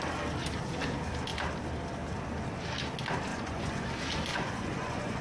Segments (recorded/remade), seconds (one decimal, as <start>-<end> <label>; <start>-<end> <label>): 0.0-3.3 recorded; 3.3-3.9 remade; 3.9-4.3 recorded; 4.3-5.2 remade